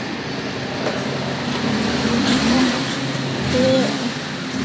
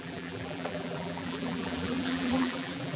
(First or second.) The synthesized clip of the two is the second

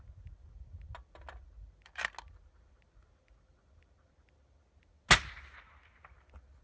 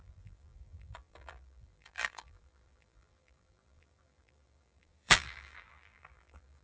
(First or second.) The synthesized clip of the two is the second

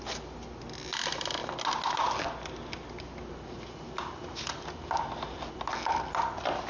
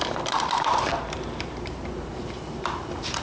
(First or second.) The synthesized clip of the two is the second